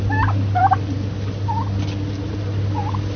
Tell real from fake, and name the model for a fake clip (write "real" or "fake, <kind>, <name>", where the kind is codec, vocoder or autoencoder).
real